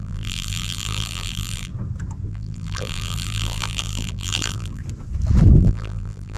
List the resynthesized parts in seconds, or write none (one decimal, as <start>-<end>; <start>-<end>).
0.0-1.7; 2.3-4.8; 5.6-6.4